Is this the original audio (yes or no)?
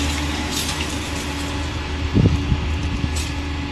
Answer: yes